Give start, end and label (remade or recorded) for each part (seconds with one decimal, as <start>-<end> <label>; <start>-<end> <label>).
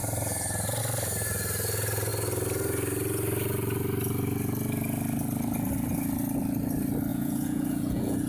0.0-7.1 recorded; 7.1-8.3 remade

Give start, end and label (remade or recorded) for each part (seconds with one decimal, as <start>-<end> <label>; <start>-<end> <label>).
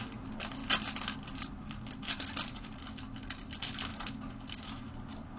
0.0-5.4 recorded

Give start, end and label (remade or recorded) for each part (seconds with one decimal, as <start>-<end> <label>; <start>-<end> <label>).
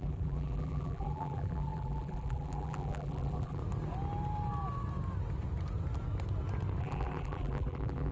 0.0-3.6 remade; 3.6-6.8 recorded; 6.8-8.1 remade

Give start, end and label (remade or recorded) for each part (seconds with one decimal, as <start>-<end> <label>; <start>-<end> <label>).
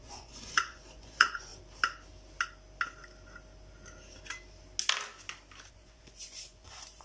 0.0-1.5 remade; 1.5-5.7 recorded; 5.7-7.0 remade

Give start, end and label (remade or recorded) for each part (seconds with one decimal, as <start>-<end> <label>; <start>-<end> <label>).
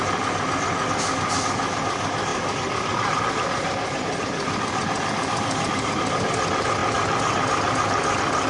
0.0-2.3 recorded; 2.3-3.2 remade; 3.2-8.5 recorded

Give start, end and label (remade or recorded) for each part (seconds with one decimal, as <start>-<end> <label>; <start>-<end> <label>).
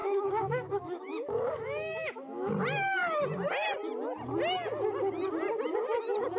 0.0-2.5 remade; 2.5-6.4 recorded